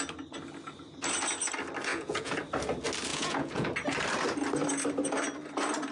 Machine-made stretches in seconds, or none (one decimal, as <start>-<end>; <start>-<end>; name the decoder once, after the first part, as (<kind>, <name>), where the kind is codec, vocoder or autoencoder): 1.9-2.4 (vocoder, Vocos); 3.1-3.7